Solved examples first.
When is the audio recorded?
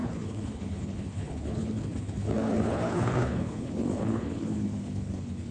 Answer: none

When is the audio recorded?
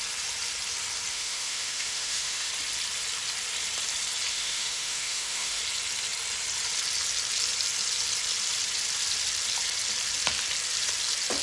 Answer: 0.0-1.1; 2.5-4.3; 5.6-11.4